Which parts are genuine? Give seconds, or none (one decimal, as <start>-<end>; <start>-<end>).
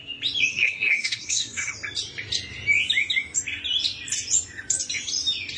0.0-0.5; 1.7-5.6